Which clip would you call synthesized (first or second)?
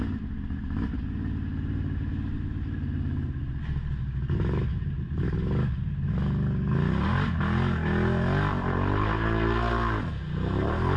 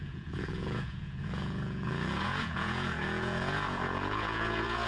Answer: second